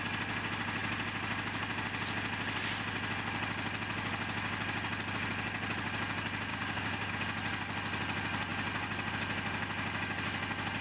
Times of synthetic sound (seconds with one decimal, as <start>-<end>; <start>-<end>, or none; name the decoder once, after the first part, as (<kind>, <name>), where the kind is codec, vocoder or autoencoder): 6.5-7.1 (codec, DAC)